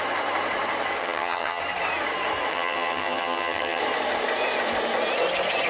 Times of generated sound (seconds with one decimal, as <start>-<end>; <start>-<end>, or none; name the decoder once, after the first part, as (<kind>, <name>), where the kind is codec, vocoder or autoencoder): 1.0-1.6 (vocoder, HiFi-GAN); 2.5-3.8